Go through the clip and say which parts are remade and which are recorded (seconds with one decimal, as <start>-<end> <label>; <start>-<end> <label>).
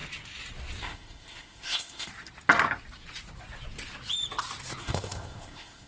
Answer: 0.0-0.8 recorded; 0.8-2.1 remade; 2.1-4.8 recorded; 4.8-5.9 remade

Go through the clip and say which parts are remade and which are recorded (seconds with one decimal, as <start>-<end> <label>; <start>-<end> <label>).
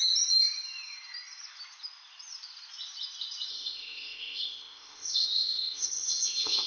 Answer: 0.0-3.5 recorded; 3.5-6.7 remade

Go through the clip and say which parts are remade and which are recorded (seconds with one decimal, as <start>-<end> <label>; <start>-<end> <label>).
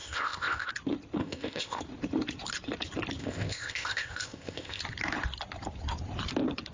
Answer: 0.0-0.7 remade; 0.7-1.2 recorded; 1.2-1.8 remade; 1.8-3.2 recorded; 3.2-4.8 remade; 4.8-6.7 recorded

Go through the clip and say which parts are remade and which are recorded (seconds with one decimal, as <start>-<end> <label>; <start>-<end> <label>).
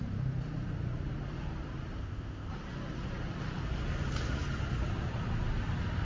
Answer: 0.0-2.0 recorded; 2.0-2.5 remade; 2.5-6.0 recorded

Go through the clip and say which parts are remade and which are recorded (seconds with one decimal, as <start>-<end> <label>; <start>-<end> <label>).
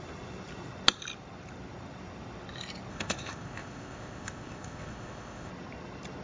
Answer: 0.0-2.9 recorded; 2.9-5.5 remade; 5.5-6.2 recorded